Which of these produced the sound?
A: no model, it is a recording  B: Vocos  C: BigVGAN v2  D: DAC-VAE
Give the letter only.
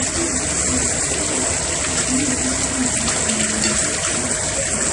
A